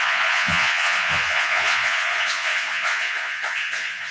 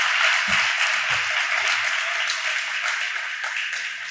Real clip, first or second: second